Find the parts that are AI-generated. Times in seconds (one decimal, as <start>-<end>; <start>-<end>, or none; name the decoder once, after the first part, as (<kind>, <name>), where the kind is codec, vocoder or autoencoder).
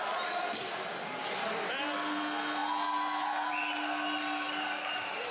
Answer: none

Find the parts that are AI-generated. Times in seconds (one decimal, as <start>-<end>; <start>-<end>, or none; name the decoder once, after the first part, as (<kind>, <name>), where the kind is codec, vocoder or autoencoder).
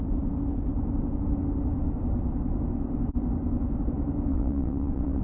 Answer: 4.3-5.2 (vocoder, WaveNeXt)